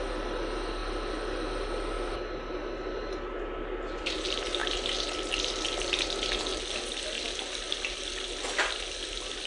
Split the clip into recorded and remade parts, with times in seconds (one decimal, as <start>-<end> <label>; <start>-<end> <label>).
0.0-9.5 recorded